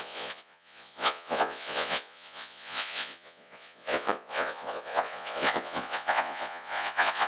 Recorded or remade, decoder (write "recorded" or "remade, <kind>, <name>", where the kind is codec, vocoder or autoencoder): remade, vocoder, Vocos